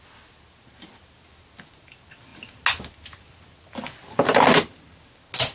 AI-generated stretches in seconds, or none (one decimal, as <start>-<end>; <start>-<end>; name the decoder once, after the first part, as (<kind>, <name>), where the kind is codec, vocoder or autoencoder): none